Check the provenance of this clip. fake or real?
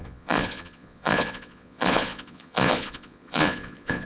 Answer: fake